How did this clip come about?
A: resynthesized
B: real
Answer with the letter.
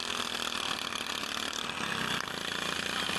B